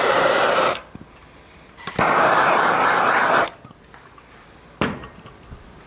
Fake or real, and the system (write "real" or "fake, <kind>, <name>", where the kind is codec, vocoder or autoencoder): real